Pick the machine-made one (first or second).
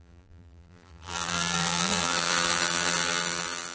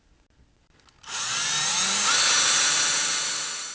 first